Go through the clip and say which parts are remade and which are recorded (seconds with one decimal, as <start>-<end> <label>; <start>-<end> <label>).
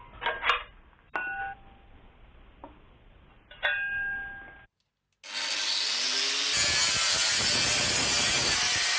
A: 0.0-6.8 recorded; 6.8-9.0 remade